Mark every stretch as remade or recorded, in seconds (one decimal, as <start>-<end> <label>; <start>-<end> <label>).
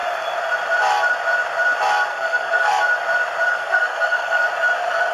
0.0-2.1 recorded; 2.1-2.8 remade; 2.8-3.5 recorded; 3.5-4.5 remade; 4.5-5.1 recorded